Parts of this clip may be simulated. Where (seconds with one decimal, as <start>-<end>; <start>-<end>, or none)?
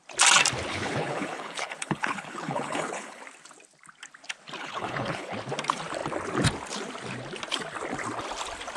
0.7-3.2; 4.6-5.3